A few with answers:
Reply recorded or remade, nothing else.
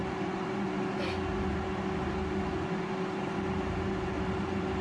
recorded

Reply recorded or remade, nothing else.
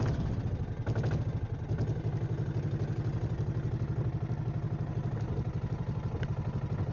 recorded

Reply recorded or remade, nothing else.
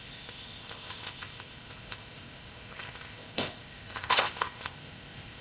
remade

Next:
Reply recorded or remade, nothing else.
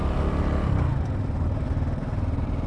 recorded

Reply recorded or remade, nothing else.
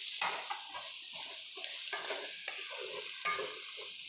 recorded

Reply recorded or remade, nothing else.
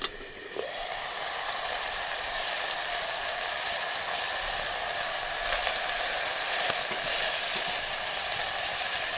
recorded